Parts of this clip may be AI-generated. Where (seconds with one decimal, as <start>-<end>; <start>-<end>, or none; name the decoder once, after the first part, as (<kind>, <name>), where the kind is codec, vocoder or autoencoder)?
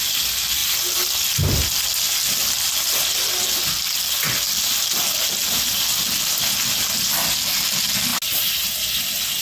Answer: none